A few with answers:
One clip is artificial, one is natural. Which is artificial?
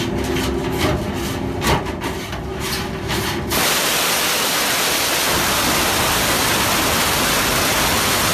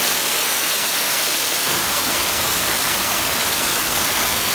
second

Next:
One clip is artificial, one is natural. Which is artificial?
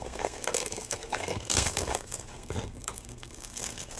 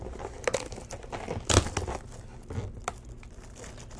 first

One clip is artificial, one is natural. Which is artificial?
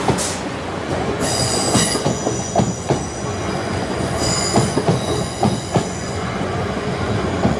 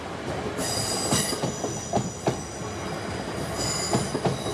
first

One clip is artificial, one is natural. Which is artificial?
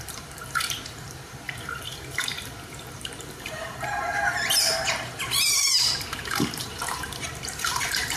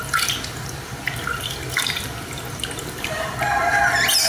first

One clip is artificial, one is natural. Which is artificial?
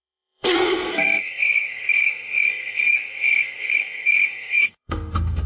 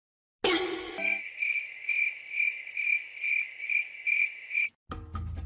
first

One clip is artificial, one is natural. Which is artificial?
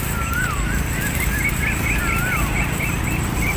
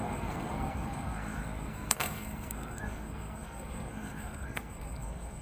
second